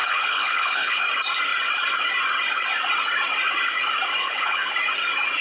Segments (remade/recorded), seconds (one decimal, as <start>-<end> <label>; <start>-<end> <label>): 0.0-1.0 remade; 1.0-4.2 recorded; 4.2-4.7 remade; 4.7-5.4 recorded